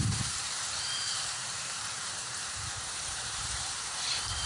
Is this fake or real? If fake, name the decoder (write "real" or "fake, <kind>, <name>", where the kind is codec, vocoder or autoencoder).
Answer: fake, vocoder, BigVGAN v2